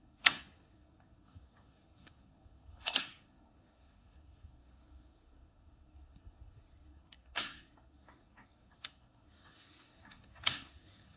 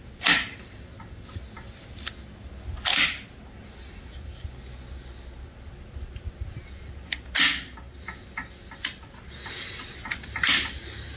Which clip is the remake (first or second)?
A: first